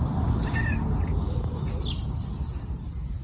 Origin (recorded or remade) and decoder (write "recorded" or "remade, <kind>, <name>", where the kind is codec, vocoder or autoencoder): recorded